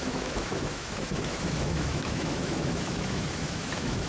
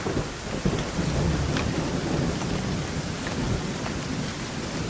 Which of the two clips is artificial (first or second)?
first